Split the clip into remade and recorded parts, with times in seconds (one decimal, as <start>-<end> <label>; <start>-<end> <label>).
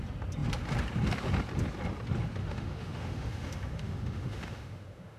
0.0-2.4 recorded; 2.4-5.2 remade